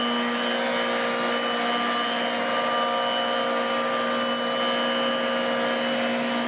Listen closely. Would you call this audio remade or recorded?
recorded